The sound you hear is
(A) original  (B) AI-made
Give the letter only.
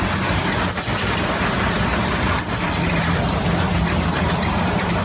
A